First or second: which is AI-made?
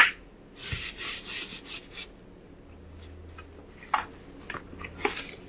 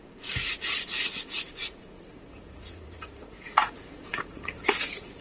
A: second